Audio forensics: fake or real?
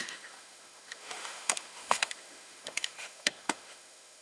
fake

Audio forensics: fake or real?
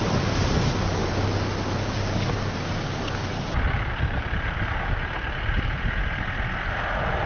real